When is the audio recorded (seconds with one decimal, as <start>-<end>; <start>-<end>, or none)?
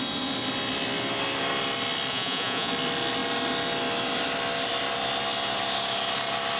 0.0-2.1; 2.7-6.6